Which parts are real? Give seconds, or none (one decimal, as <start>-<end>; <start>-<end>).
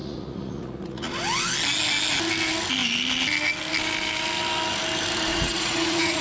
1.1-5.3